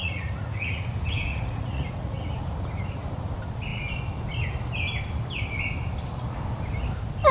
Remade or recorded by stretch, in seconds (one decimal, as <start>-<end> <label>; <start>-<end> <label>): 0.0-0.8 remade; 0.8-1.3 recorded; 1.3-2.3 remade; 2.3-7.3 recorded